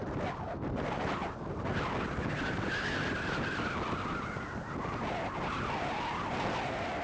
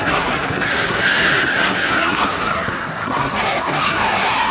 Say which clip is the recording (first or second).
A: first